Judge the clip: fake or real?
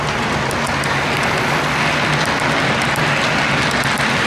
real